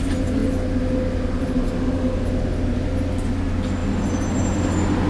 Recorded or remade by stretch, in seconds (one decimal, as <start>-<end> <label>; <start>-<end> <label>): 0.0-5.1 recorded